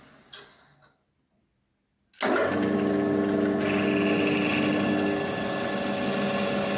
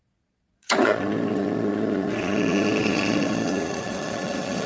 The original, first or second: first